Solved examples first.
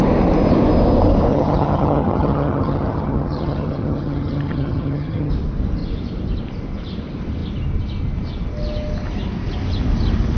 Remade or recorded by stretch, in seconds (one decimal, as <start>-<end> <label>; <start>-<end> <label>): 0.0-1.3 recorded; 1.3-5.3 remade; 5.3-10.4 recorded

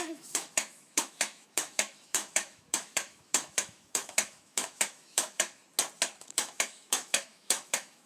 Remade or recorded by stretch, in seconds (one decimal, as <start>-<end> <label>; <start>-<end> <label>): 0.0-5.6 remade; 5.6-6.2 recorded; 6.2-8.1 remade

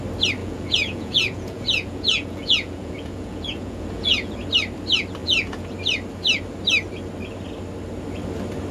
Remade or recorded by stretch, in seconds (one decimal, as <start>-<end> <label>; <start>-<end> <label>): 0.0-0.4 recorded; 0.4-4.3 remade; 4.3-5.2 recorded; 5.2-5.7 remade; 5.7-8.7 recorded

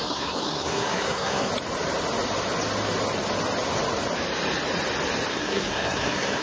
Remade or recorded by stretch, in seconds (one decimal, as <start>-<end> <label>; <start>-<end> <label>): 0.0-1.5 remade; 1.5-5.3 recorded; 5.3-6.4 remade